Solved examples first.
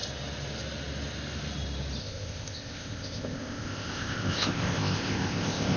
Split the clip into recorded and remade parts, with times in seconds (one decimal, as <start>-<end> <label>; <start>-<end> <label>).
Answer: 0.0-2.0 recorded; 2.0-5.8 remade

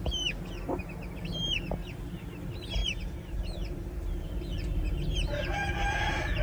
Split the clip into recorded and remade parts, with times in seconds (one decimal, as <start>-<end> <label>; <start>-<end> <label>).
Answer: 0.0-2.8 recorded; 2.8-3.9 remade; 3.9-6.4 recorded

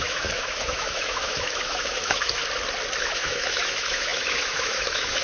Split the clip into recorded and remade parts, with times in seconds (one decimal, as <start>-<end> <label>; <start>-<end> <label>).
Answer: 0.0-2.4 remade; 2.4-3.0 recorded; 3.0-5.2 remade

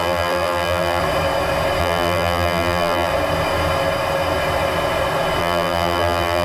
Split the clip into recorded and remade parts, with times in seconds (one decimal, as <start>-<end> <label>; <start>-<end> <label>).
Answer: 0.0-1.0 remade; 1.0-1.8 recorded; 1.8-3.1 remade; 3.1-5.4 recorded; 5.4-6.4 remade

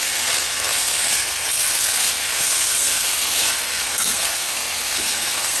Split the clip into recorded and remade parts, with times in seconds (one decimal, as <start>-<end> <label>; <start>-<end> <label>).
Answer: 0.0-5.6 remade

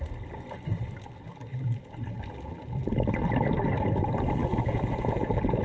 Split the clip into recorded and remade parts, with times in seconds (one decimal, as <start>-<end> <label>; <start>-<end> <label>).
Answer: 0.0-4.4 recorded; 4.4-5.6 remade

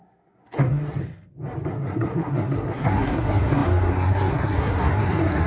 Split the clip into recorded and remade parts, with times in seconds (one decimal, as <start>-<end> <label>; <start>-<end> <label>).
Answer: 0.0-1.0 remade; 1.0-1.7 recorded; 1.7-5.5 remade

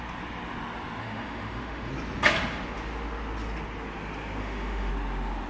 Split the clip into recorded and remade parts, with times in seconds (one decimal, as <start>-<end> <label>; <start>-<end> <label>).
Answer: 0.0-1.0 recorded; 1.0-1.9 remade; 1.9-4.4 recorded; 4.4-4.9 remade; 4.9-5.5 recorded